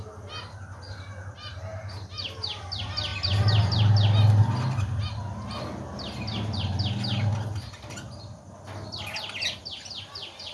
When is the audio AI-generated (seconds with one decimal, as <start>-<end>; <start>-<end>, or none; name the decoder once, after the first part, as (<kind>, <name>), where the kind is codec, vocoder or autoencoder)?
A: none